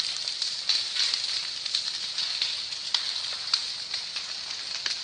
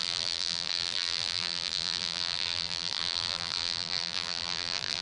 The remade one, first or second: second